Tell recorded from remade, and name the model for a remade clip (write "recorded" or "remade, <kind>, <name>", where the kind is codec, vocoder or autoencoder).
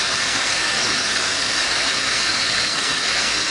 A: remade, codec, SNAC